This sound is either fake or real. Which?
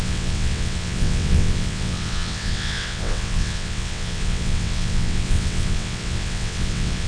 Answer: fake